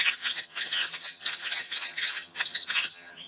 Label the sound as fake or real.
fake